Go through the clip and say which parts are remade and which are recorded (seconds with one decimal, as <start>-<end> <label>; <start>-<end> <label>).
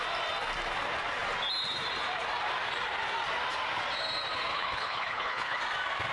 0.0-4.5 recorded; 4.5-5.6 remade; 5.6-6.1 recorded